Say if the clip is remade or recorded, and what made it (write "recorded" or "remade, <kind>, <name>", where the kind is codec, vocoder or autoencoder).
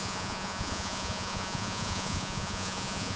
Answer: remade, vocoder, Vocos